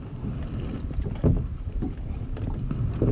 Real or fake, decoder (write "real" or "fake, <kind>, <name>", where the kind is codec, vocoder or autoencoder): real